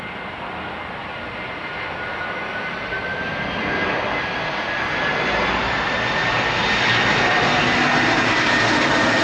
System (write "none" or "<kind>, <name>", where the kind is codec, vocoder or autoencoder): none